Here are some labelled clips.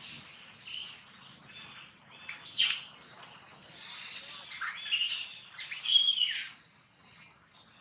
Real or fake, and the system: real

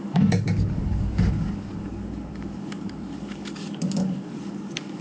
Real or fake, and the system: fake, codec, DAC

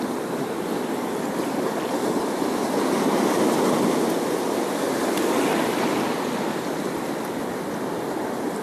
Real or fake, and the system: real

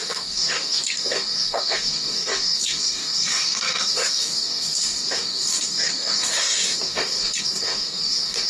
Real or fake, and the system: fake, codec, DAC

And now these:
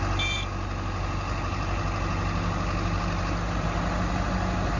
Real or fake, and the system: real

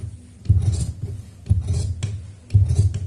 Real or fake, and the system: real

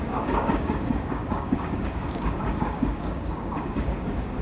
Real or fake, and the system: fake, codec, DAC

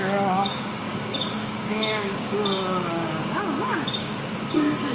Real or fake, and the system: fake, codec, DAC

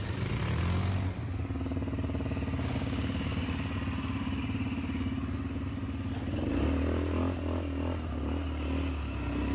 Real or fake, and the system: real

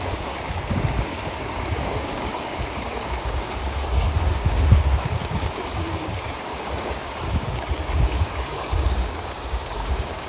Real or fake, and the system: fake, codec, DAC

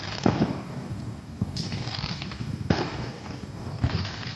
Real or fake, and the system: fake, codec, DAC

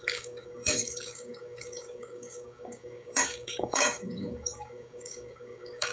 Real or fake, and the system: fake, codec, DAC